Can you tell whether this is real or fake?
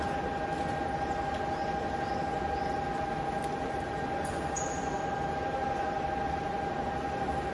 real